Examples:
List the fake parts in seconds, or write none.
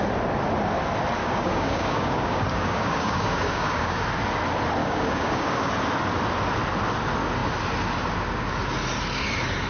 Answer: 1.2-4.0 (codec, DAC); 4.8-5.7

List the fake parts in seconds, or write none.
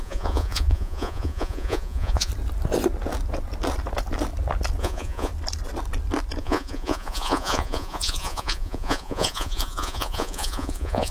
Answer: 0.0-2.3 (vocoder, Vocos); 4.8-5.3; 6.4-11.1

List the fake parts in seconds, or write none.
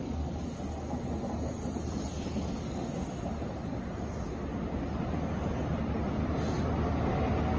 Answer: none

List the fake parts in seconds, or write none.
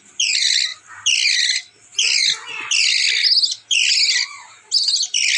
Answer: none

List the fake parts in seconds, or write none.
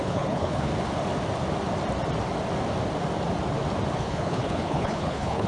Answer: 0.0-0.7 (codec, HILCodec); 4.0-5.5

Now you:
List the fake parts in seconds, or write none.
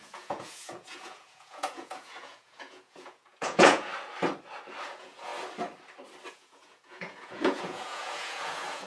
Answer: 0.0-3.9 (vocoder, Vocos); 4.8-5.3; 6.3-8.9